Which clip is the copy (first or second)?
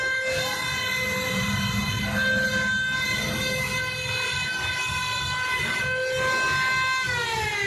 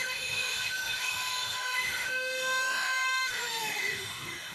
second